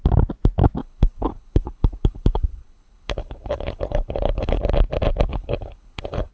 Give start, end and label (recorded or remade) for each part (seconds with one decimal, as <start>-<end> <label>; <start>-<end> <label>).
0.0-0.8 recorded; 0.8-4.6 remade; 4.6-5.3 recorded; 5.3-6.3 remade